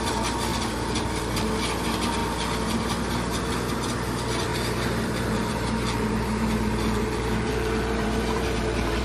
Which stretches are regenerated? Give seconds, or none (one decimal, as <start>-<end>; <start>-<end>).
0.5-1.2; 4.5-9.0